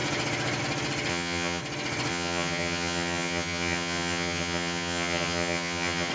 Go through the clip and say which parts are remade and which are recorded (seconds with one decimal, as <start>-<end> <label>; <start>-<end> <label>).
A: 0.0-1.1 recorded; 1.1-1.6 remade; 1.6-2.1 recorded; 2.1-6.1 remade